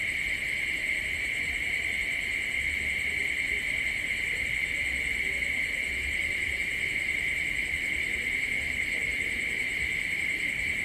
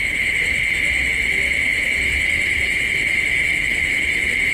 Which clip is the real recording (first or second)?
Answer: second